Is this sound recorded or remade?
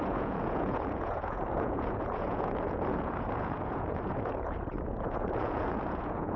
remade